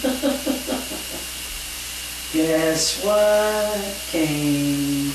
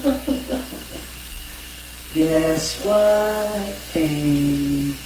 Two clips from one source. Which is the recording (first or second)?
first